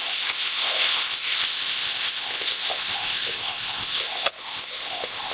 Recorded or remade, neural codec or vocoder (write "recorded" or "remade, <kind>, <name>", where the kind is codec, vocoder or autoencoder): remade, codec, ZipCodec